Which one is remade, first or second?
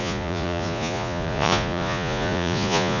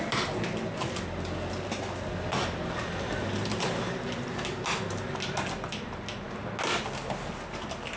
first